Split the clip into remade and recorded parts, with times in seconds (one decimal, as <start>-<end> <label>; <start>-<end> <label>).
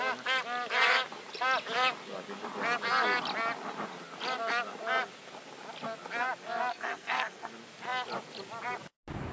0.0-6.7 recorded; 6.7-7.5 remade; 7.5-9.3 recorded